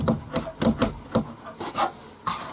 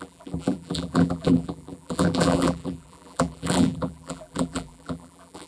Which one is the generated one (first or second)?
second